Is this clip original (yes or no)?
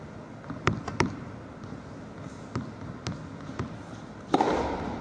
yes